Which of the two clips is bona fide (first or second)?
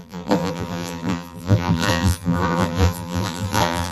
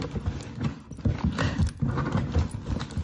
second